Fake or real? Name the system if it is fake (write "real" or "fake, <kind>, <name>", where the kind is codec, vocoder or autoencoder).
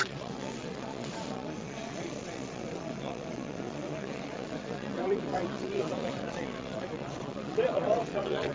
fake, vocoder, WaveNeXt